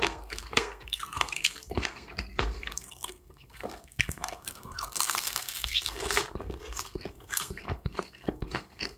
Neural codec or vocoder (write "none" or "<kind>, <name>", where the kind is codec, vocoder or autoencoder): codec, SNAC